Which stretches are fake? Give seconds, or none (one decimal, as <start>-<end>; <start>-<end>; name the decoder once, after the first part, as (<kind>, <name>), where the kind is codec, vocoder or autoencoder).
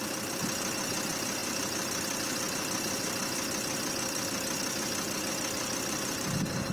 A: none